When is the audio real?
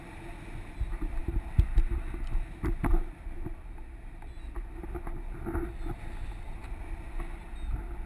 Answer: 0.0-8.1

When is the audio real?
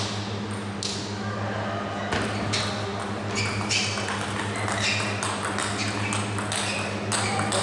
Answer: 0.0-7.6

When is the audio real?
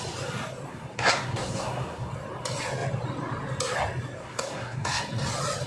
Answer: 0.0-0.7; 2.1-4.2; 5.0-5.7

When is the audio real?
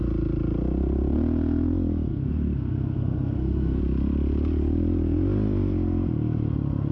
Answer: 0.0-2.1; 3.8-6.9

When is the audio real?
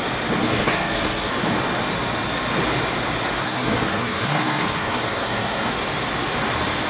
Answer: 0.0-0.4; 1.3-3.4; 5.7-6.9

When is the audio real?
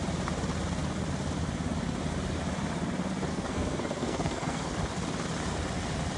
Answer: 0.0-3.3; 4.7-6.2